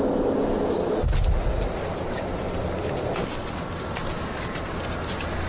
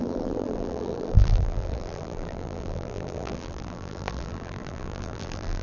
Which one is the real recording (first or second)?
first